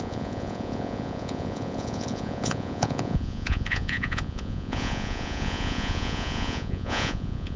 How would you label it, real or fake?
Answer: fake